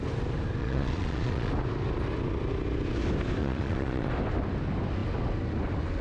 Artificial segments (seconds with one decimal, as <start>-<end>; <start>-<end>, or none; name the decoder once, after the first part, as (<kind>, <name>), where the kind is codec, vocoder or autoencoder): 0.6-1.5 (vocoder, Vocos); 3.4-4.1

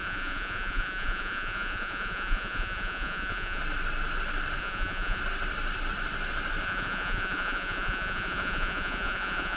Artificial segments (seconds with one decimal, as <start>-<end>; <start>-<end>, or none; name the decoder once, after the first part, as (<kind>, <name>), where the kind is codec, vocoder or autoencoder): 0.0-3.6 (vocoder, Vocos); 4.6-5.2; 6.6-9.6